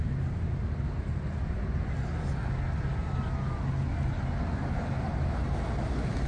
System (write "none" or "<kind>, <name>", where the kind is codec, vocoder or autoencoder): none